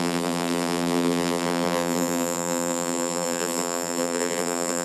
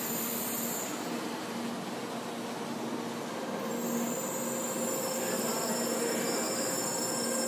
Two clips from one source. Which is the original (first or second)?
second